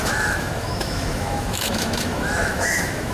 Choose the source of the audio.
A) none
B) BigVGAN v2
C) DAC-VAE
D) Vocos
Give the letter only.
C